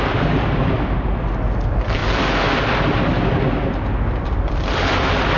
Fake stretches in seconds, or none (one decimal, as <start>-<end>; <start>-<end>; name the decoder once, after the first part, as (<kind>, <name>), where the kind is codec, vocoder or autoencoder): 0.0-2.0 (vocoder, BigVGAN v2); 4.2-5.4